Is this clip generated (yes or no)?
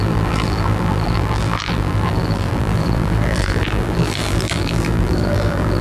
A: yes